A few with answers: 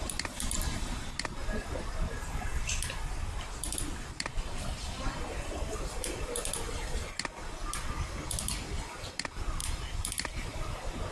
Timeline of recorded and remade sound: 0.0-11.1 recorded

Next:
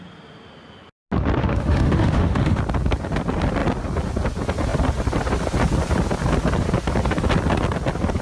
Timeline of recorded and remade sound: 0.0-1.4 recorded; 1.4-2.6 remade; 2.6-8.2 recorded

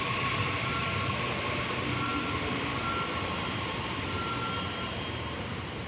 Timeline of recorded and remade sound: 0.0-5.9 recorded

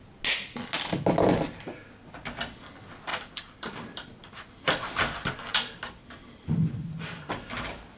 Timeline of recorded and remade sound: 0.0-3.1 recorded; 3.1-7.3 remade; 7.3-8.0 recorded

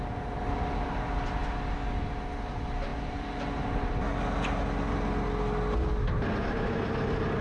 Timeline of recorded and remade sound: 0.0-7.4 recorded

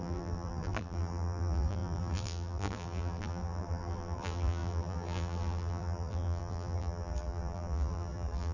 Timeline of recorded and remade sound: 0.0-8.5 remade

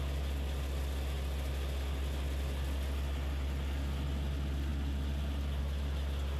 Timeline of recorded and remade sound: 0.0-6.4 recorded

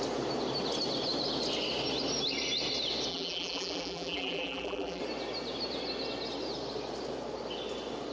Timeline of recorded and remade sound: 0.0-3.1 recorded; 3.1-5.0 remade; 5.0-8.1 recorded